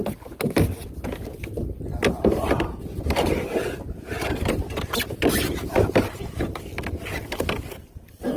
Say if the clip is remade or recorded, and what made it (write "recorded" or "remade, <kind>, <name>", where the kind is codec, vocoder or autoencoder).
recorded